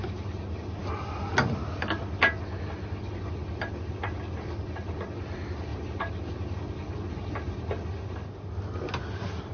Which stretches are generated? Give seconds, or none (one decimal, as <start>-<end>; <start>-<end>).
none